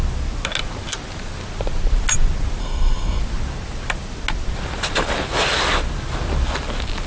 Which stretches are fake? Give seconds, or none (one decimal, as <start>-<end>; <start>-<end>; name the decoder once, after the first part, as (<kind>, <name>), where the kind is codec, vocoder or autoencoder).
2.6-3.2 (codec, SNAC)